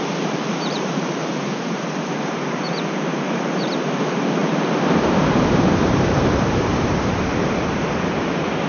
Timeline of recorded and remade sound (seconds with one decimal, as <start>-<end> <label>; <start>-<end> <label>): 0.0-8.7 remade